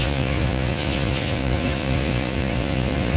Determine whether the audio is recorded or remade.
remade